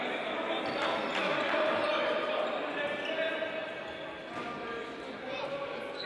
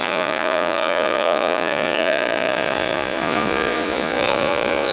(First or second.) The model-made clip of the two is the second